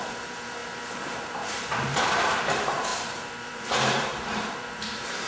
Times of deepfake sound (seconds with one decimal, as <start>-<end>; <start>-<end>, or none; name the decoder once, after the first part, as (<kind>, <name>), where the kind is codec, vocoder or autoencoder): 0.0-5.3 (vocoder, BigVGAN v2)